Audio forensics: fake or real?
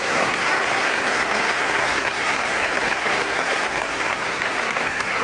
fake